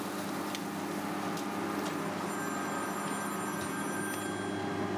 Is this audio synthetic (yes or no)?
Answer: no